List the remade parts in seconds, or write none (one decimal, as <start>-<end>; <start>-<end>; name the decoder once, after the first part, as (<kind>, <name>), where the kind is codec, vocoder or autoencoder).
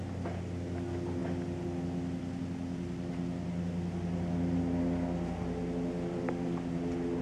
none